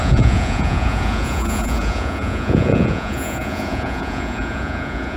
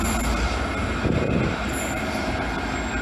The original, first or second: second